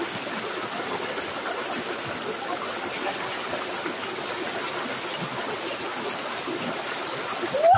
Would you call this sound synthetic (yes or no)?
no